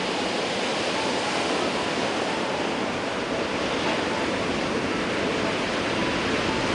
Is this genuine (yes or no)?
yes